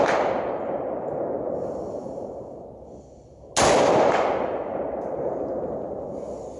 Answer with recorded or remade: recorded